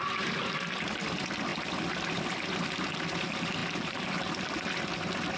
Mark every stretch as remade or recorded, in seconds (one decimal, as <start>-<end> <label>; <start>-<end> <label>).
0.0-3.6 recorded; 3.6-4.3 remade; 4.3-5.4 recorded